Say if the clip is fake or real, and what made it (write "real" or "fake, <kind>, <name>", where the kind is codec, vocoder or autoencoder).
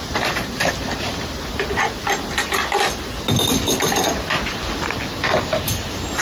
real